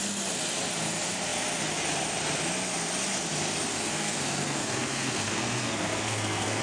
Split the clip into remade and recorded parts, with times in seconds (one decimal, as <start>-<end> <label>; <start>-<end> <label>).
0.0-3.7 recorded; 3.7-6.6 remade

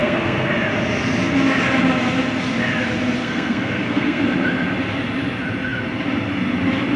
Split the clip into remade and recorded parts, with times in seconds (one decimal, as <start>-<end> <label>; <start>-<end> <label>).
0.0-0.5 remade; 0.5-3.2 recorded; 3.2-4.2 remade; 4.2-7.0 recorded

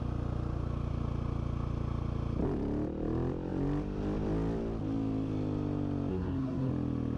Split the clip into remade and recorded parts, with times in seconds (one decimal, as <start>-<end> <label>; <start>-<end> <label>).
0.0-6.1 recorded; 6.1-6.7 remade; 6.7-7.2 recorded

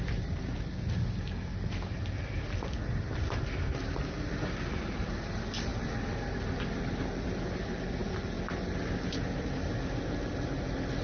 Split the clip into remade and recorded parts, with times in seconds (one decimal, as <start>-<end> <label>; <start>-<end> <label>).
0.0-11.0 recorded

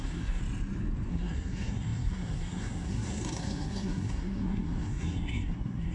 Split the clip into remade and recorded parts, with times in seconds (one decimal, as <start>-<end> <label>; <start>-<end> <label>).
0.0-0.4 remade; 0.4-1.1 recorded; 1.1-5.9 remade

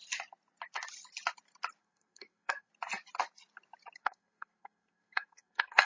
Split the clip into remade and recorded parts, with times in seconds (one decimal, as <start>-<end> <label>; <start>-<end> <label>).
0.0-1.8 recorded; 1.8-2.7 remade; 2.7-4.0 recorded; 4.0-5.9 remade

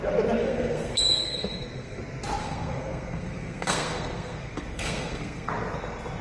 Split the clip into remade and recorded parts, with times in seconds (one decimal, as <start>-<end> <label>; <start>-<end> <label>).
0.0-0.4 recorded; 0.4-2.0 remade; 2.0-2.4 recorded; 2.4-5.5 remade; 5.5-6.2 recorded

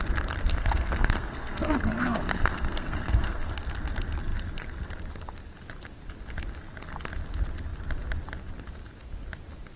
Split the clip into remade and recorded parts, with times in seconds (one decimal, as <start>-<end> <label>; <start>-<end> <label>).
0.0-0.4 recorded; 0.4-3.5 remade; 3.5-9.8 recorded